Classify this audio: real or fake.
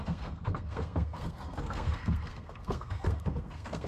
fake